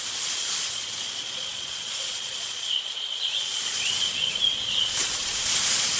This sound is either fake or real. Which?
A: fake